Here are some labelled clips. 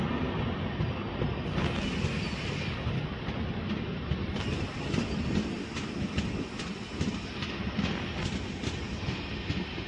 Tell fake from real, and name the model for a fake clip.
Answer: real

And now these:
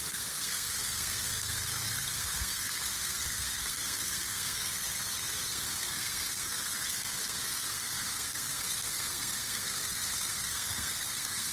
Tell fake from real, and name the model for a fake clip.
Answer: fake, codec, SNAC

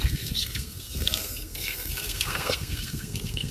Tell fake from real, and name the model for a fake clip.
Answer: fake, codec, SNAC